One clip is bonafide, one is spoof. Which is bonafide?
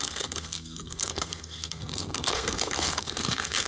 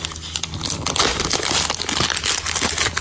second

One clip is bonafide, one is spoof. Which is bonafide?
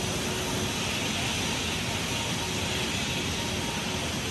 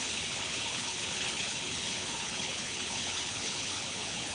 first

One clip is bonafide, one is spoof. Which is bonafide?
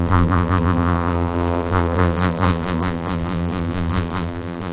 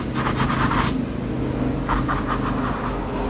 second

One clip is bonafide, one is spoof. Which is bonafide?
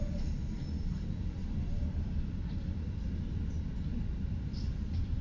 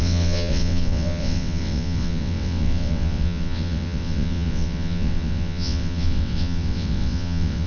first